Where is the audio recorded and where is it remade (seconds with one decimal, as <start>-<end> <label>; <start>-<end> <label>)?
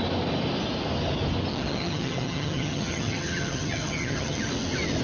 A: 0.0-1.5 recorded; 1.5-4.5 remade; 4.5-5.0 recorded